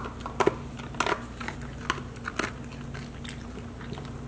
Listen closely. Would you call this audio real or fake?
real